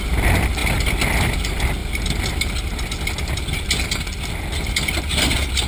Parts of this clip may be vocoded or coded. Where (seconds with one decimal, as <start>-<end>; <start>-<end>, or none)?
none